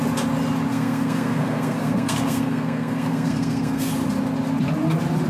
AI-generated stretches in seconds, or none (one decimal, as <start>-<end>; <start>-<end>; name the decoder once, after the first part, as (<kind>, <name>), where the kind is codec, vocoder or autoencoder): 0.7-3.9 (codec, SNAC)